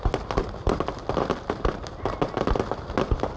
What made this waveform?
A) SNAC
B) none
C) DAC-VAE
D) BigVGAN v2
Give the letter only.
B